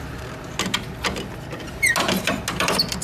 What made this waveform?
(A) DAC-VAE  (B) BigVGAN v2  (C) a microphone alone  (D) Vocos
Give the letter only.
C